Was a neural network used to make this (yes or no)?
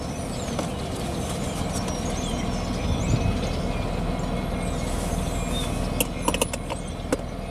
no